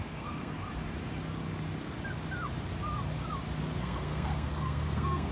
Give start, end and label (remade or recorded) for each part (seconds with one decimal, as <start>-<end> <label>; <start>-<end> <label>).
0.0-0.6 remade; 0.6-3.8 recorded; 3.8-5.3 remade